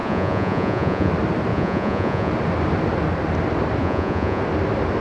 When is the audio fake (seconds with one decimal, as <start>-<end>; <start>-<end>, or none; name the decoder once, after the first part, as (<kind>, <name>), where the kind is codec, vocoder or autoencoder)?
0.0-1.1 (vocoder, Vocos); 1.5-2.3; 3.8-4.4